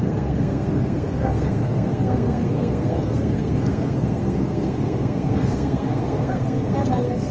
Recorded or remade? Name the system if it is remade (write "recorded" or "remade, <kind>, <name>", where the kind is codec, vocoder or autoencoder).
remade, codec, SNAC